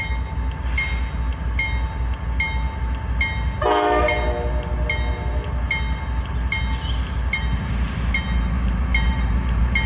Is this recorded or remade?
recorded